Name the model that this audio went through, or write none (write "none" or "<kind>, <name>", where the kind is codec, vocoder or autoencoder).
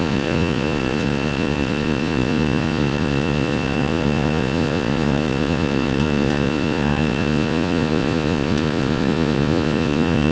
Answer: vocoder, Vocos